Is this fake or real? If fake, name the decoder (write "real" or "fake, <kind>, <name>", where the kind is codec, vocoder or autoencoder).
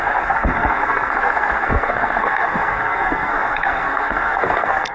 fake, codec, SNAC